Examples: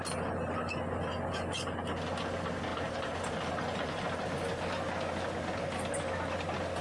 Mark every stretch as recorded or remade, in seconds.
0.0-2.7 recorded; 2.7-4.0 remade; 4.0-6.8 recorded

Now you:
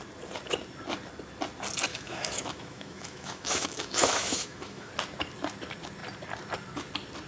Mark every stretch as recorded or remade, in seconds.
0.0-1.9 recorded; 1.9-4.9 remade; 4.9-7.3 recorded

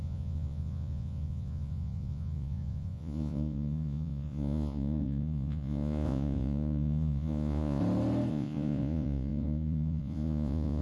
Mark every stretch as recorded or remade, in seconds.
0.0-7.8 remade; 7.8-8.3 recorded; 8.3-10.8 remade

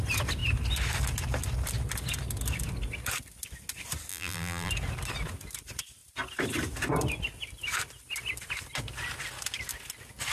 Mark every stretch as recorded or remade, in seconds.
0.0-4.1 recorded; 4.1-4.7 remade; 4.7-10.3 recorded

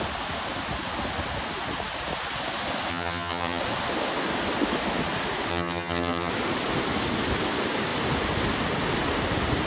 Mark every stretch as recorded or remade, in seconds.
0.0-2.9 recorded; 2.9-3.6 remade; 3.6-5.5 recorded; 5.5-6.3 remade; 6.3-9.7 recorded

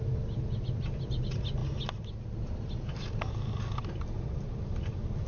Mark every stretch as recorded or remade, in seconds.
0.0-5.3 recorded

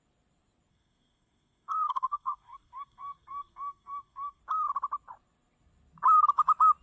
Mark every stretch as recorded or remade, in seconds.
0.0-0.7 recorded; 0.7-4.4 remade; 4.4-6.8 recorded